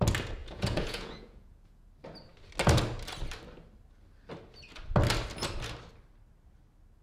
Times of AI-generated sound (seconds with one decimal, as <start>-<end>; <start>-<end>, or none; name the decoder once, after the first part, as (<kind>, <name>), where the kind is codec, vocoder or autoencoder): 0.4-1.9 (vocoder, Vocos)